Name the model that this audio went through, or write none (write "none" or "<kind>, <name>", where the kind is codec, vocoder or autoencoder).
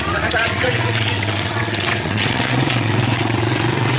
vocoder, WaveNeXt